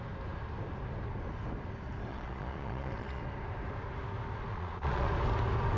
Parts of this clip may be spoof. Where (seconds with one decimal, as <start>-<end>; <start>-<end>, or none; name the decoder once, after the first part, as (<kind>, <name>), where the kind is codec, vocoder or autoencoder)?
2.1-3.2 (vocoder, Vocos); 4.5-5.1